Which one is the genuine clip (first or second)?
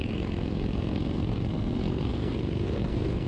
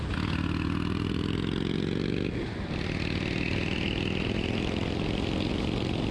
second